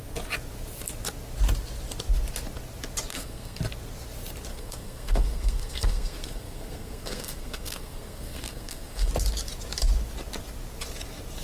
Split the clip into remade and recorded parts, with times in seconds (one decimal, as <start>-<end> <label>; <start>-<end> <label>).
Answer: 0.0-3.1 recorded; 3.1-3.6 remade; 3.6-4.5 recorded; 4.5-9.1 remade; 9.1-11.4 recorded